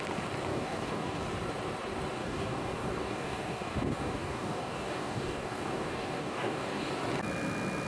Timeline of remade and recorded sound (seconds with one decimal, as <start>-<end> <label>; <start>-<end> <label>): 0.0-0.5 recorded; 0.5-1.2 remade; 1.2-2.2 recorded; 2.2-6.9 remade; 6.9-7.9 recorded